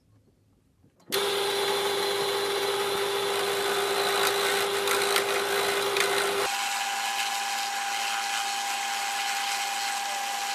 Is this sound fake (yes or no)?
no